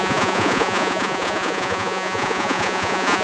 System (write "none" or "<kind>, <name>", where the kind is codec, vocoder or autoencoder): vocoder, Vocos